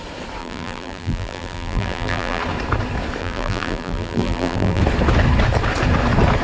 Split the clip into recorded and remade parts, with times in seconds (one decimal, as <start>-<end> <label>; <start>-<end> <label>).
0.0-0.4 recorded; 0.4-2.4 remade; 2.4-3.2 recorded; 3.2-4.8 remade; 4.8-6.4 recorded